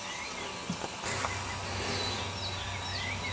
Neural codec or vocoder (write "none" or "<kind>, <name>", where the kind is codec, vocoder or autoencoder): none